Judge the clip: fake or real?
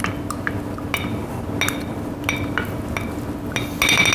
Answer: real